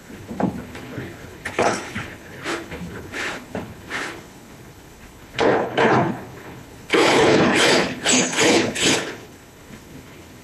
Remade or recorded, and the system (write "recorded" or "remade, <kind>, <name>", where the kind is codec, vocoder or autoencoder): remade, codec, HILCodec